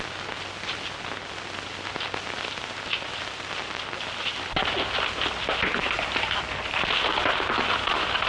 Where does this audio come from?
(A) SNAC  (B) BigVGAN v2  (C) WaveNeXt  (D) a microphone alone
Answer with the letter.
D